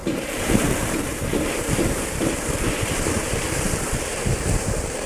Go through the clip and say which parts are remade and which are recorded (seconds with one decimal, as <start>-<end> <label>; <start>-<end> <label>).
0.0-5.1 remade